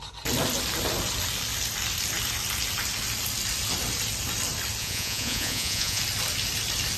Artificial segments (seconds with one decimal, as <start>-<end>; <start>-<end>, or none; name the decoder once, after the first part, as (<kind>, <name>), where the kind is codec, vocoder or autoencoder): 4.8-6.0 (vocoder, Vocos)